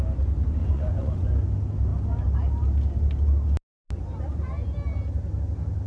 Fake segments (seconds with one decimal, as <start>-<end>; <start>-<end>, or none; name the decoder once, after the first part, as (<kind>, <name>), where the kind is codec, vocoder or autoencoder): 0.6-1.3 (vocoder, Vocos)